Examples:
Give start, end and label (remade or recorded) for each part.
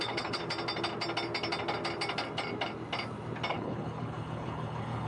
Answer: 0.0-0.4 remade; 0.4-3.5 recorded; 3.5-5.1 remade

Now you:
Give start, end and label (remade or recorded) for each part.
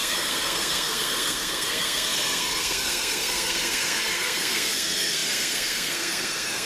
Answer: 0.0-6.7 remade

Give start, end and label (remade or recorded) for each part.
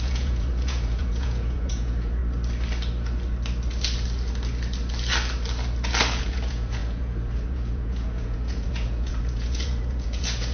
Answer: 0.0-2.2 remade; 2.2-6.2 recorded; 6.2-10.5 remade